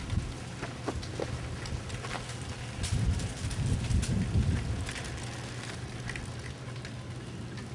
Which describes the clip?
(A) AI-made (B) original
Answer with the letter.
B